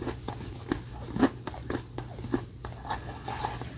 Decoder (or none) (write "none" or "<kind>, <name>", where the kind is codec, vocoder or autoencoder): none